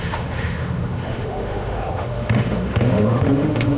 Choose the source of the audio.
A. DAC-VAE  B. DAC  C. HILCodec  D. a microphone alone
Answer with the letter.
A